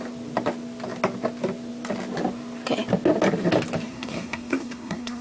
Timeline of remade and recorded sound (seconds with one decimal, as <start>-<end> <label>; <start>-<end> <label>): 0.0-3.9 recorded; 3.9-5.2 remade